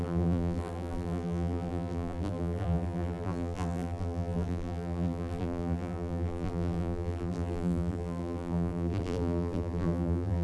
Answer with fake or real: fake